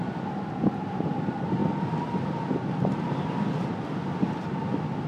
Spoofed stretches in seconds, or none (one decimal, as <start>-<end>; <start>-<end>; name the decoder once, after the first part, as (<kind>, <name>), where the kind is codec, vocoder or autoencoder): none